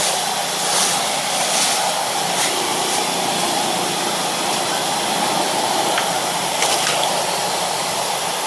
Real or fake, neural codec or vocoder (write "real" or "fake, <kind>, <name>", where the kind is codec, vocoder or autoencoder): real